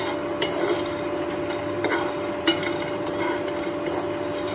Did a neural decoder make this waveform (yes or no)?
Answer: no